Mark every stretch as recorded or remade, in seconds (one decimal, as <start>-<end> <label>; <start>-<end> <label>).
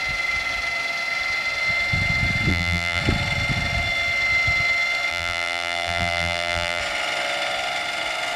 0.0-2.5 recorded; 2.5-3.0 remade; 3.0-5.1 recorded; 5.1-6.8 remade; 6.8-8.4 recorded